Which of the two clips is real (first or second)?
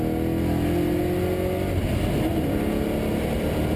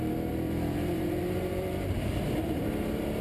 first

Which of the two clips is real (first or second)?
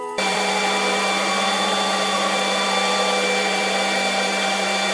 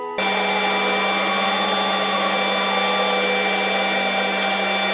second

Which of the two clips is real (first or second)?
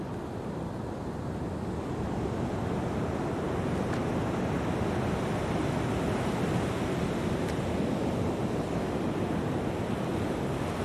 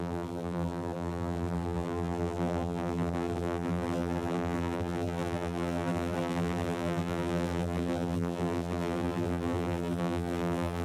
first